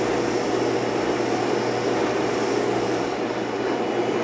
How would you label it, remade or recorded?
recorded